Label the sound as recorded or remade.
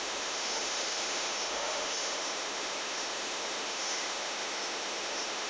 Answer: remade